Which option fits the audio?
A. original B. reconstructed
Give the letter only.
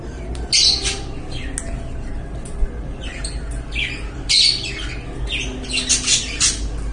A